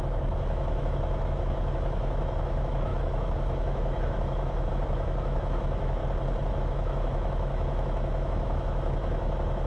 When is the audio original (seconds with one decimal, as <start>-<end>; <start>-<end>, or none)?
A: 6.0-6.5